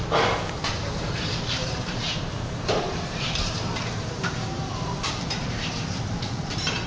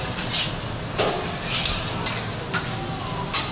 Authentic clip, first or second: second